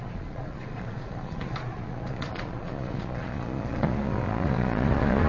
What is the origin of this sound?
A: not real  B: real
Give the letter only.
A